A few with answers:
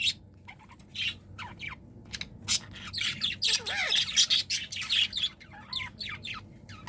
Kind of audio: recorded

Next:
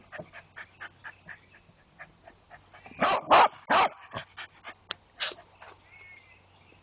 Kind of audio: recorded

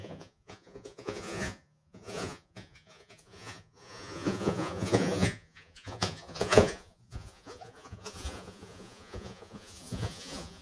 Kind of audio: remade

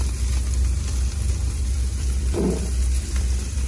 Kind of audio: remade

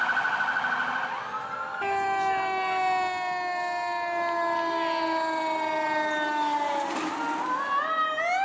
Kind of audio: recorded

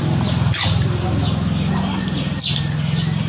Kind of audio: remade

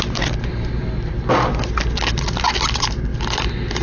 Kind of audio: recorded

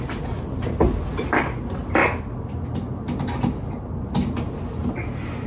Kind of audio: recorded